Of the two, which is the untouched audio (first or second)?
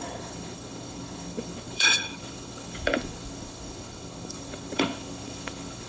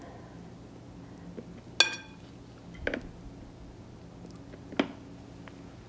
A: second